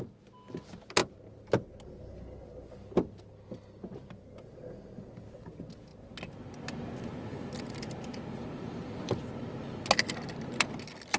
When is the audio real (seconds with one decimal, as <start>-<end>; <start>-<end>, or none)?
0.0-11.2